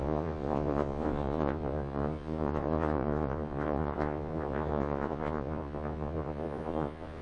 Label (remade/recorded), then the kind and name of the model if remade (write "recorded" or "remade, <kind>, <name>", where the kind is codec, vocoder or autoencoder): remade, vocoder, Vocos